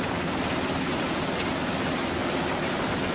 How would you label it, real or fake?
real